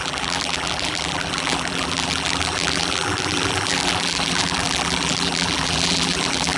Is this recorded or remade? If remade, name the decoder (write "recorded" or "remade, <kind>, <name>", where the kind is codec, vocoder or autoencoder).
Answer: remade, vocoder, BigVGAN v2